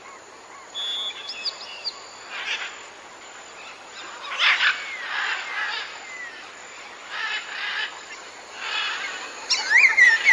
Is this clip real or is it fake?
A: real